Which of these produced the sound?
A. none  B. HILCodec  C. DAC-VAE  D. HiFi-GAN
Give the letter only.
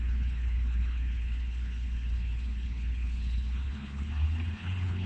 B